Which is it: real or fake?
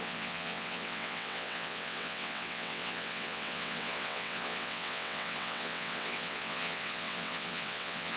fake